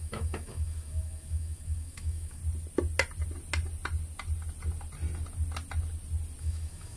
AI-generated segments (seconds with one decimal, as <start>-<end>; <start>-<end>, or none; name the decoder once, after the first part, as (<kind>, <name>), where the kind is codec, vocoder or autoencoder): 0.0-2.4 (autoencoder, DAC-VAE); 6.4-7.0